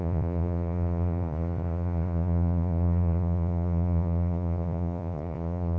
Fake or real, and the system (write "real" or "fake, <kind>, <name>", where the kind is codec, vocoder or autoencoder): fake, vocoder, Vocos